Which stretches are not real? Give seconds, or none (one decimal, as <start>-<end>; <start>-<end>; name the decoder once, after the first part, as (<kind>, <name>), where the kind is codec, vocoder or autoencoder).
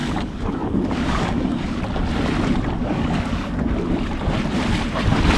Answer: 0.0-1.8 (codec, DAC); 2.8-3.7